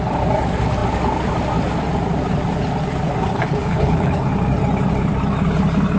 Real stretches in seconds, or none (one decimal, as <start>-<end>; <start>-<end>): 0.0-3.3; 4.3-6.0